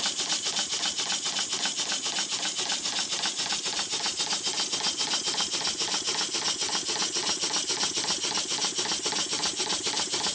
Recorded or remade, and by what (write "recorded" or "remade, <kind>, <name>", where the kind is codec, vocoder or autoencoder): recorded